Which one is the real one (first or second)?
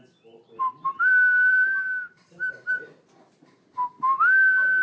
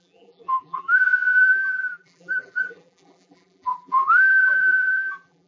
first